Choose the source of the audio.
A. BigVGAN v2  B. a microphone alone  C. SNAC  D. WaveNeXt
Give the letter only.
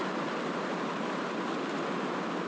B